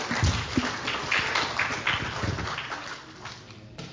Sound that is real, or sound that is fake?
real